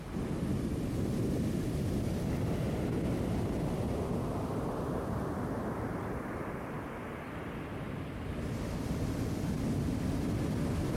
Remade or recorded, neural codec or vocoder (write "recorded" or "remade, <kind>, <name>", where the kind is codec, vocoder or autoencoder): recorded